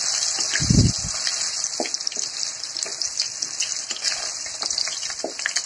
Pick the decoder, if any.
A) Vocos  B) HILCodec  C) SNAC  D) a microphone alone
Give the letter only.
D